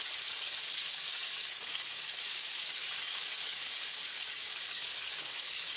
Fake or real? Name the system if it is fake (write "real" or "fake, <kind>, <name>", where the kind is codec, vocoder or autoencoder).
fake, codec, DAC